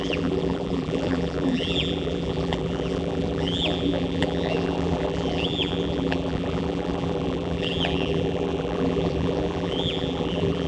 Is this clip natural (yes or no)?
no